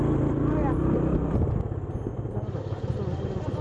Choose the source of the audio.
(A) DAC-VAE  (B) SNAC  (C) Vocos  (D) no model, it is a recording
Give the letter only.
D